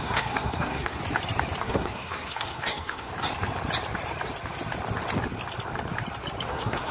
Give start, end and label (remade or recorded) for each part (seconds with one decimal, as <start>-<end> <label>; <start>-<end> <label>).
0.0-1.0 remade; 1.0-1.6 recorded; 1.6-3.1 remade; 3.1-6.5 recorded; 6.5-6.9 remade